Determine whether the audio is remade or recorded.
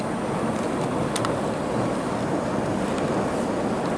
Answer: recorded